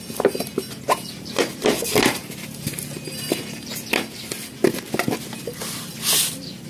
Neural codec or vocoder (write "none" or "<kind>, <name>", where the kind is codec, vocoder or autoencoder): none